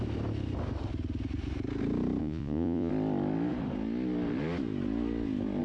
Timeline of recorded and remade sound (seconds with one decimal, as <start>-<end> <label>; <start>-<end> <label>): 0.0-2.2 recorded; 2.2-2.9 remade; 2.9-5.6 recorded